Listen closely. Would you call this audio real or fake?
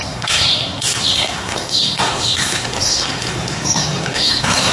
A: fake